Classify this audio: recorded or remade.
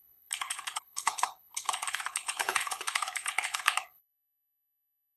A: remade